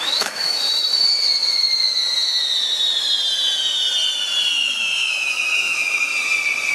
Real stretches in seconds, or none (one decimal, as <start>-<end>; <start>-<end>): 0.9-4.5; 6.1-6.7